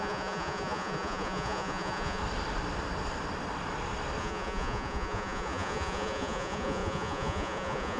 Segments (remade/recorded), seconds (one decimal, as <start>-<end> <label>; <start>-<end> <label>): 0.0-2.2 remade; 2.2-4.2 recorded; 4.2-8.0 remade